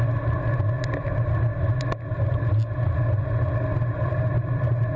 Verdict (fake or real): real